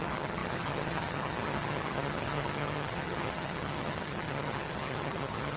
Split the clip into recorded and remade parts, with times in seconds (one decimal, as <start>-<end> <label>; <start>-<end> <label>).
0.0-5.6 remade

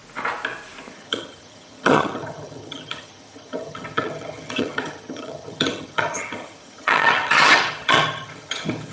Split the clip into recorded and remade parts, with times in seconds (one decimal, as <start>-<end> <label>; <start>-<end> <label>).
0.0-0.9 recorded; 0.9-8.9 remade

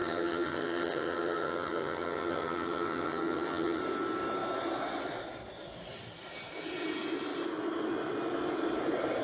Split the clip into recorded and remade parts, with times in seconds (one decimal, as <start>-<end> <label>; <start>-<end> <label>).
0.0-3.8 remade; 3.8-9.2 recorded